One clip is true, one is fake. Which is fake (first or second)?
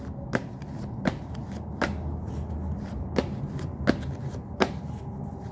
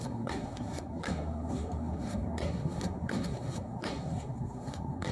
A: second